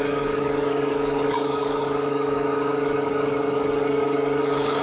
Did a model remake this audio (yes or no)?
yes